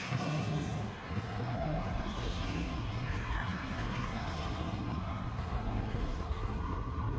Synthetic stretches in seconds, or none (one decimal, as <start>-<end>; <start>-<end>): 0.0-7.2